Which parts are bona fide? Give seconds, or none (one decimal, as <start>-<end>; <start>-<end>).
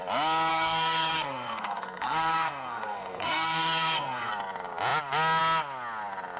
0.0-0.5; 4.3-6.4